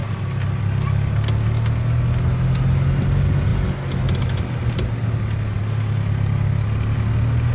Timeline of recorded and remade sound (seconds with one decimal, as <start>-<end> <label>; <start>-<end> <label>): 0.0-7.5 recorded